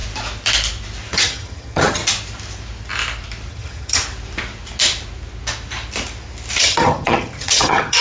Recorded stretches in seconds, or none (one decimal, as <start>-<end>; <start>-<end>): 0.0-1.1; 2.0-3.5; 4.0-6.6